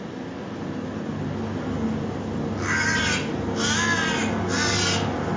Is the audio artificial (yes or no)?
no